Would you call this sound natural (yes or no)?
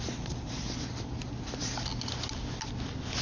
yes